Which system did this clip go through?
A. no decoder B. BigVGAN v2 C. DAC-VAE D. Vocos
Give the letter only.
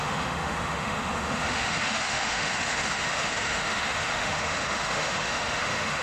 C